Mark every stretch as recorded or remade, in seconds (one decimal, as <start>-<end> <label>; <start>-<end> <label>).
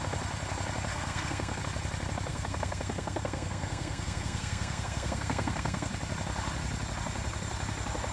0.0-0.9 recorded; 0.9-1.6 remade; 1.6-2.3 recorded; 2.3-5.9 remade; 5.9-8.1 recorded